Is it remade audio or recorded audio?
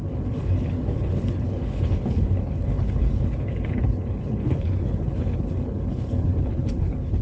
remade